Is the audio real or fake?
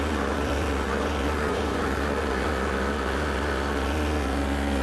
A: fake